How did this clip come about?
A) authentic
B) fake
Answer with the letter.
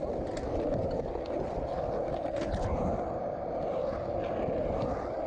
A